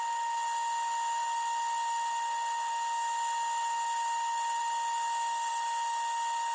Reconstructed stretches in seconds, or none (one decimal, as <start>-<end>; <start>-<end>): none